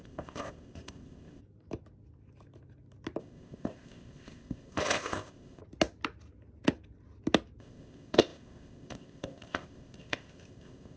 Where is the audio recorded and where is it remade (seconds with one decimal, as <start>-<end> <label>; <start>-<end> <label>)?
0.0-1.4 remade; 1.4-3.2 recorded; 3.2-5.6 remade; 5.6-7.6 recorded; 7.6-11.0 remade